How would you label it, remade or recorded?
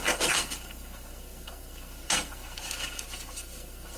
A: remade